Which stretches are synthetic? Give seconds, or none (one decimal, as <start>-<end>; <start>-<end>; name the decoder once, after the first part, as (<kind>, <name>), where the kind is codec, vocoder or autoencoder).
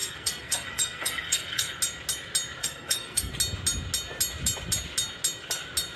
0.0-1.8 (codec, SNAC); 2.6-3.3